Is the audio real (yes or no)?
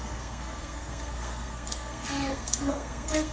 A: no